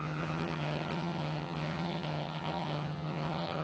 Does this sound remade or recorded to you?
remade